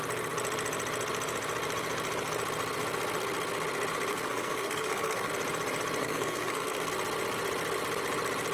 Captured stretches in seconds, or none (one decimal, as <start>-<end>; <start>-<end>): 0.0-4.1; 5.3-6.0; 6.9-8.5